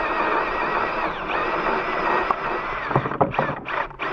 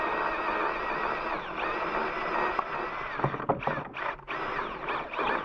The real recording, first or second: second